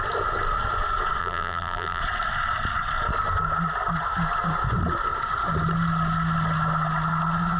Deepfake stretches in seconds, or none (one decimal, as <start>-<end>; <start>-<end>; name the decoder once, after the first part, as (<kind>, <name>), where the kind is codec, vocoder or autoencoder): 1.2-2.0 (vocoder, BigVGAN v2)